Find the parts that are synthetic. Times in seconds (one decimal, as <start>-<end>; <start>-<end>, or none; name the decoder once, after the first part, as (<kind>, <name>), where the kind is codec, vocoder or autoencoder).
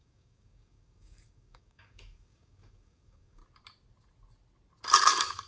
0.0-3.4 (codec, DAC); 5.0-5.5